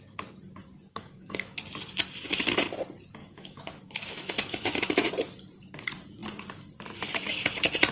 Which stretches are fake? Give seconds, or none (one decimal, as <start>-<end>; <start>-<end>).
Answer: 0.9-1.6; 3.2-5.1